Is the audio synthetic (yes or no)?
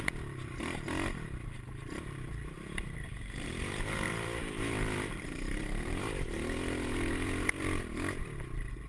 yes